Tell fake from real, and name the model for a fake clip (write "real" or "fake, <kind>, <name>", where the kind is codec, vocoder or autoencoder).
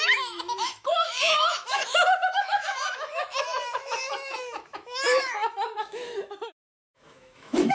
fake, autoencoder, DAC-VAE